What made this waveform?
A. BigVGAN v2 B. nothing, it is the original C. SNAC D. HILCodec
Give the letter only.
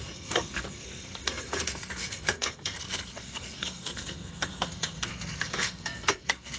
C